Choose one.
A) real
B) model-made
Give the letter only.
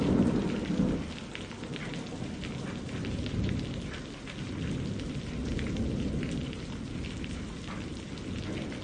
A